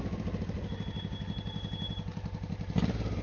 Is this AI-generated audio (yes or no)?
no